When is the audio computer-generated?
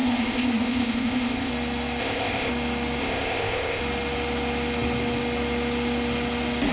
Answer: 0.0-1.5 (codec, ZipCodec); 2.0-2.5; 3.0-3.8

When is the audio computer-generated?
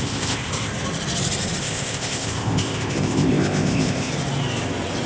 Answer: 0.0-0.7 (codec, ZipCodec); 1.6-4.1